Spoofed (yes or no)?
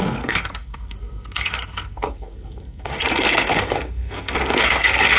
yes